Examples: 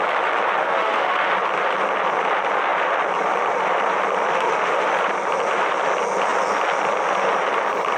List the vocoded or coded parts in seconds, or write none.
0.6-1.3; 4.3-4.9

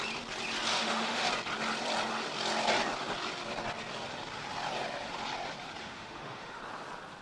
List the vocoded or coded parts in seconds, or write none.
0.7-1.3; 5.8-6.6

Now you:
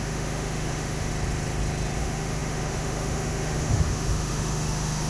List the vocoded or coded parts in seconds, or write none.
0.0-1.1; 2.0-5.1